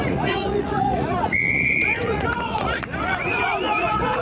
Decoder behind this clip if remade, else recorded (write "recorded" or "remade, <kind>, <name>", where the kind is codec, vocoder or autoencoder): remade, vocoder, Vocos